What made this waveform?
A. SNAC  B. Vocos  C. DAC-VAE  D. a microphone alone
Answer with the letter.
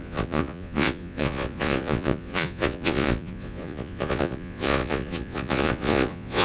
B